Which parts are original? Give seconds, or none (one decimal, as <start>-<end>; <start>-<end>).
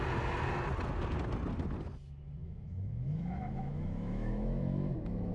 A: 0.0-2.4